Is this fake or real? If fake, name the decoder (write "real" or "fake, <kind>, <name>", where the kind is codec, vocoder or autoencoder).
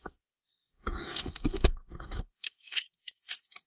fake, codec, DAC